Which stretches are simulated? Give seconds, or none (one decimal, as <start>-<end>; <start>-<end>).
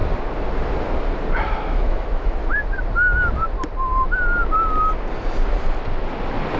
1.7-2.4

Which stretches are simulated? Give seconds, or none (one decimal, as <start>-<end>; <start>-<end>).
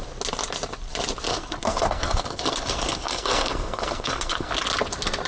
1.3-4.5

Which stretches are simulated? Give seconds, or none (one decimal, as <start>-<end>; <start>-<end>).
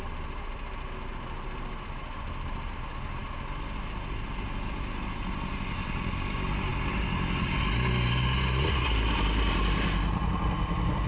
none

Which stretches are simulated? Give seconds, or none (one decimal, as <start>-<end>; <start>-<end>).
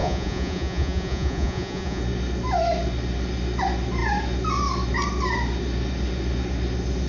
0.0-2.0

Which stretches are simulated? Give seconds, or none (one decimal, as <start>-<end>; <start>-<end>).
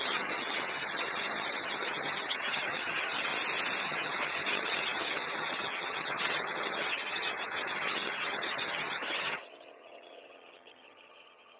0.0-3.3; 3.8-11.6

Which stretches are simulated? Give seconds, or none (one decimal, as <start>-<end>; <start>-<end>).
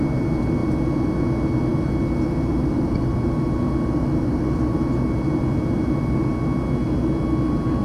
none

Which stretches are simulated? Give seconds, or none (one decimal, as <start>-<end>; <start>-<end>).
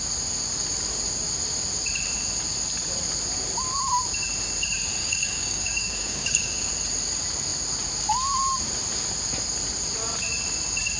5.0-6.7